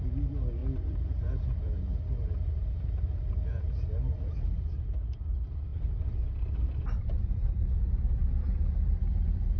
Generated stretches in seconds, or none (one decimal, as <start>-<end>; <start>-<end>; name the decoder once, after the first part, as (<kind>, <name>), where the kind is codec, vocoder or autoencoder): none